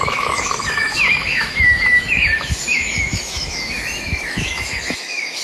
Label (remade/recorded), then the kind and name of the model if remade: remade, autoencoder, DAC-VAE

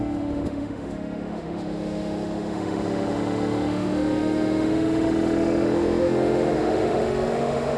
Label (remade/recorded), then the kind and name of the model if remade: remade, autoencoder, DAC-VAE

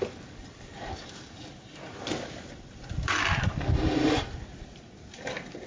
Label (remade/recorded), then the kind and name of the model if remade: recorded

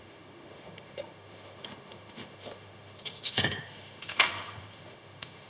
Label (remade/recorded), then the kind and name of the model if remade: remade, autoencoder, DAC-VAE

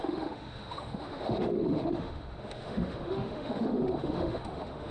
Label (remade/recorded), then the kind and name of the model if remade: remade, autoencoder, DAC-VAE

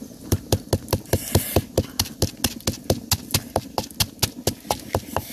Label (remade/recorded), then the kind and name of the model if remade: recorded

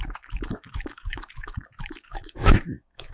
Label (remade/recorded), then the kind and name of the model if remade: remade, autoencoder, DAC-VAE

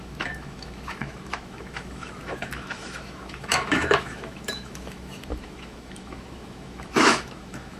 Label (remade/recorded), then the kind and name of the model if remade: remade, autoencoder, DAC-VAE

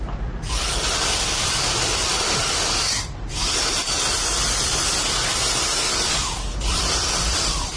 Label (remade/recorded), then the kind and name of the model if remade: recorded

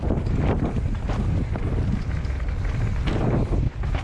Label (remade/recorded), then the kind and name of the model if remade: recorded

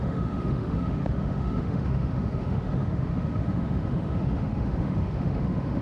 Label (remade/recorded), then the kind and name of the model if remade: remade, autoencoder, DAC-VAE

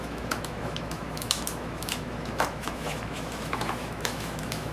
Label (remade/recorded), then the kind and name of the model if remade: remade, autoencoder, DAC-VAE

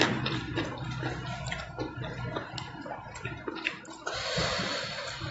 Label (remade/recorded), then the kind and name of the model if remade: recorded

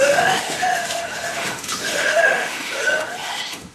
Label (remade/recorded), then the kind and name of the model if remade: remade, autoencoder, DAC-VAE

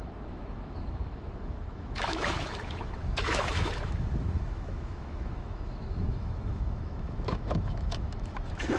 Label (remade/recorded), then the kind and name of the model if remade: remade, autoencoder, DAC-VAE